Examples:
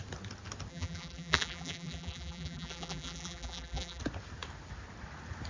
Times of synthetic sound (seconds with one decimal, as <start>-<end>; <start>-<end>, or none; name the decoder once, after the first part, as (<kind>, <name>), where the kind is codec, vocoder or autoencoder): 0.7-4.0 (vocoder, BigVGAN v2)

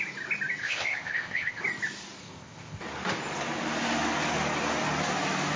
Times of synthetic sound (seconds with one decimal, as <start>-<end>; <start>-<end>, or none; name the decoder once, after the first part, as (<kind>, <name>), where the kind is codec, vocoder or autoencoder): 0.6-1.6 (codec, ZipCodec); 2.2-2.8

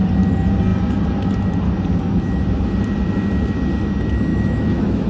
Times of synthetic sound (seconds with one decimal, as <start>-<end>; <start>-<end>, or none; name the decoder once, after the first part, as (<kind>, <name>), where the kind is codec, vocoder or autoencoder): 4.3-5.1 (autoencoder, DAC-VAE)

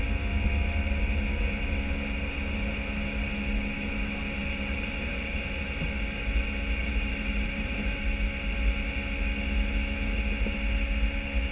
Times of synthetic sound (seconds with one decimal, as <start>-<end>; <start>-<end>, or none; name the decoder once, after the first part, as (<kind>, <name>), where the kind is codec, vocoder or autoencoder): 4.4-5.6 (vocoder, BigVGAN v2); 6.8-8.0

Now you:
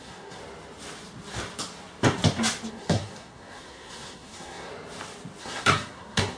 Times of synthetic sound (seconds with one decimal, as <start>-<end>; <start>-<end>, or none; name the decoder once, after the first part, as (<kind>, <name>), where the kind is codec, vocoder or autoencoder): 0.0-0.4 (codec, SNAC); 2.7-4.7; 5.4-6.4

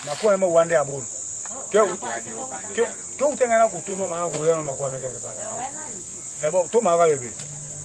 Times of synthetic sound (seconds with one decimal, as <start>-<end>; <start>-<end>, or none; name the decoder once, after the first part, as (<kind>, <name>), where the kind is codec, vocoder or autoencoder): 3.9-6.5 (vocoder, WaveNeXt)